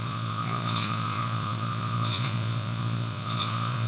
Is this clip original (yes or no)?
no